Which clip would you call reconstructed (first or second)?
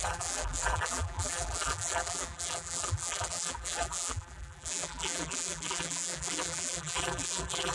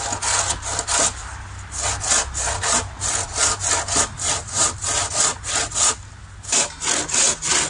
first